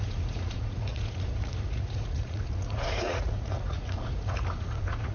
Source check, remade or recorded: remade